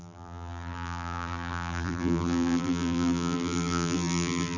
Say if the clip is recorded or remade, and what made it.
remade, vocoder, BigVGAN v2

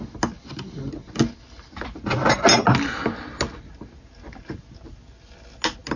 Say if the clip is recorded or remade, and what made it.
recorded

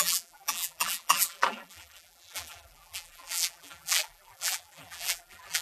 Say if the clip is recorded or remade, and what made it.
remade, vocoder, BigVGAN v2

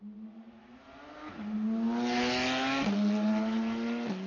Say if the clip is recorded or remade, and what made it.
recorded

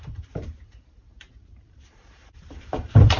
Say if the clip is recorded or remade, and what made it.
remade, vocoder, BigVGAN v2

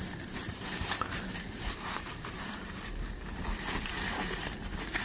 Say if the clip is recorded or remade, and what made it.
remade, vocoder, BigVGAN v2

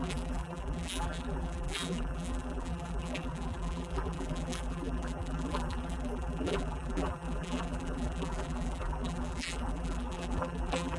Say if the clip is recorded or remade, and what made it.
remade, vocoder, BigVGAN v2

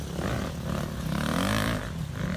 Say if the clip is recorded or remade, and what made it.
recorded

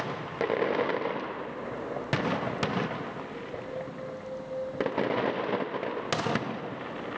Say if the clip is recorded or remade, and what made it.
recorded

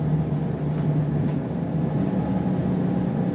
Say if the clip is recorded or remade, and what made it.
recorded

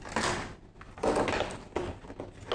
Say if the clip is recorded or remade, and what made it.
recorded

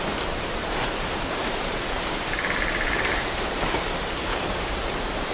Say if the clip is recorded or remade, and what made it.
remade, vocoder, BigVGAN v2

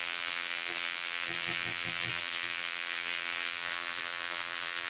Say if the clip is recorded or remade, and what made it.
remade, vocoder, BigVGAN v2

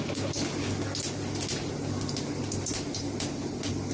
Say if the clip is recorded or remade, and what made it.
recorded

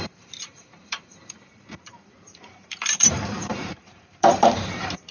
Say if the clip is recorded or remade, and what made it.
remade, vocoder, BigVGAN v2